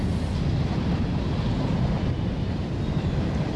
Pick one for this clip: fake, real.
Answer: fake